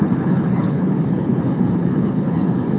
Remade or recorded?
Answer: remade